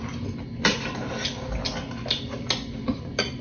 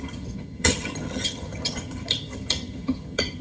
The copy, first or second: second